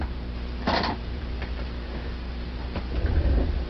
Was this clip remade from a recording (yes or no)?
yes